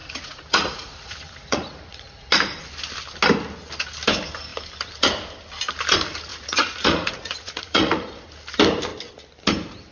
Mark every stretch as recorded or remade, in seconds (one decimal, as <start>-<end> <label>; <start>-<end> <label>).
0.0-2.3 remade; 2.3-6.3 recorded; 6.3-8.3 remade; 8.3-9.9 recorded